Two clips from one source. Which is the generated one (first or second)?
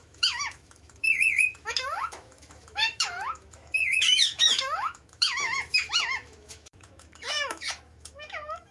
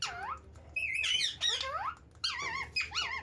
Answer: first